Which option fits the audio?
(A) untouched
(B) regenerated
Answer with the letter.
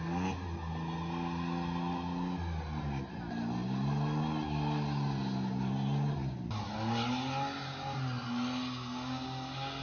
A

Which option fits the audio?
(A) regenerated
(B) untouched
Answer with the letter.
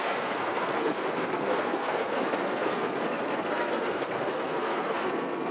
A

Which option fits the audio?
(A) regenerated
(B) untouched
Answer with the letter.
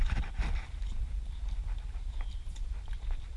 B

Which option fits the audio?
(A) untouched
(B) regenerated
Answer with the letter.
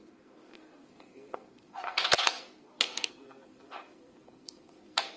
B